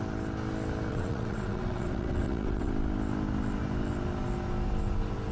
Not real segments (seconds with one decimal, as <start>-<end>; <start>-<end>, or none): 0.9-2.7